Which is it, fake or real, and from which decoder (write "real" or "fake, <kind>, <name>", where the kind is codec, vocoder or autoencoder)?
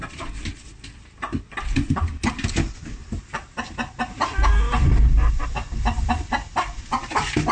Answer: real